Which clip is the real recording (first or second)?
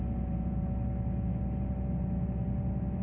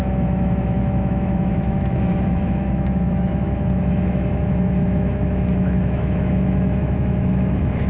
first